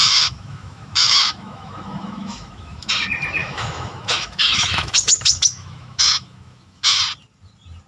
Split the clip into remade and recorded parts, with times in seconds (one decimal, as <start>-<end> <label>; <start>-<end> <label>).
0.0-2.9 remade; 2.9-3.4 recorded; 3.4-7.0 remade; 7.0-7.9 recorded